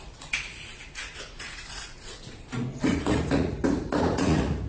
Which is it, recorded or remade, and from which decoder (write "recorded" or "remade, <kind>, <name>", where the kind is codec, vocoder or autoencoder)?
remade, vocoder, Vocos